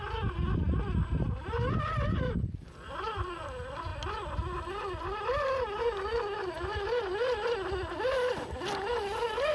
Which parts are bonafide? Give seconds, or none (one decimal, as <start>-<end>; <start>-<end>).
0.0-9.5